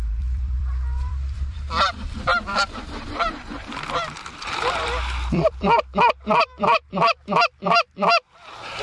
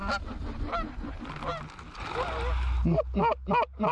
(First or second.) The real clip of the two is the second